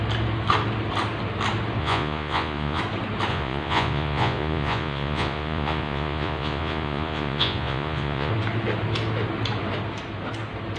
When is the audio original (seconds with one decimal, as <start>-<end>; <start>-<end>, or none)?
0.0-1.8; 2.8-3.3; 8.3-10.8

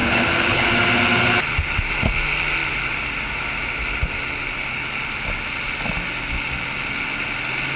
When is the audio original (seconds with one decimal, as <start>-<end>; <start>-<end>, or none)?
0.7-7.8